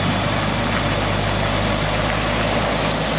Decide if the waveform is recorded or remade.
recorded